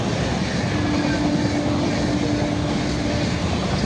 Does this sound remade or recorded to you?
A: recorded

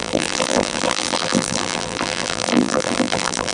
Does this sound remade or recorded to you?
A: remade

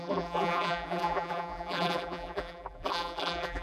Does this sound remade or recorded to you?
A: remade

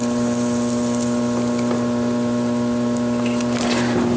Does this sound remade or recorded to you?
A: remade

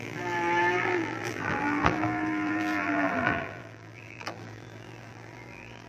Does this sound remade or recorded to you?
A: remade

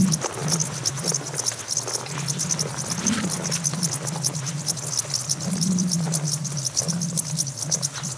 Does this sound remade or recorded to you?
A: recorded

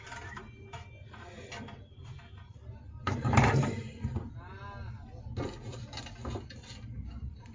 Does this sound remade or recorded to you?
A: recorded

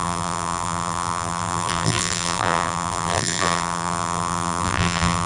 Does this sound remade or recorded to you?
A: remade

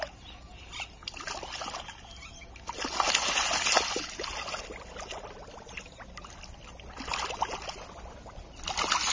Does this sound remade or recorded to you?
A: recorded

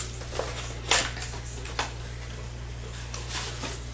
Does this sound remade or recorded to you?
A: recorded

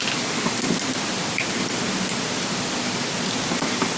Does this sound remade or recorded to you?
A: remade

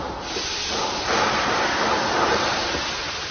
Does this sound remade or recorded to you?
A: remade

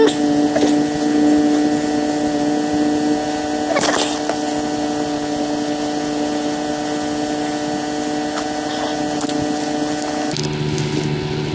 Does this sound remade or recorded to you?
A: recorded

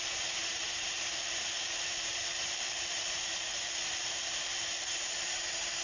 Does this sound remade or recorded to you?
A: remade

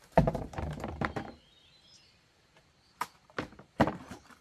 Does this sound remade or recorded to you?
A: remade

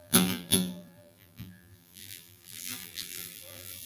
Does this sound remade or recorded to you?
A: remade